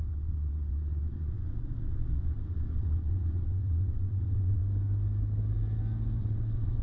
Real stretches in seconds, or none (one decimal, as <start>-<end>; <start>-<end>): 4.6-6.2